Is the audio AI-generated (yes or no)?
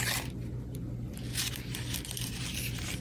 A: no